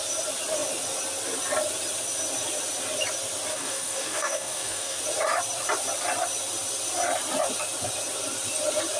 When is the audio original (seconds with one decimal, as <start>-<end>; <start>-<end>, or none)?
0.0-3.5; 5.0-9.0